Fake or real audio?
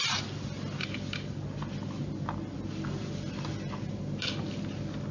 real